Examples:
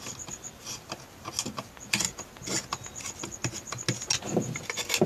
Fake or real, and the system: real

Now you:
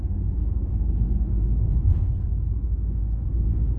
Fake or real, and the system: fake, codec, SNAC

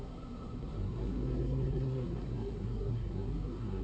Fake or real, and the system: fake, codec, SNAC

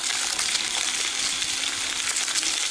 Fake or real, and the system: real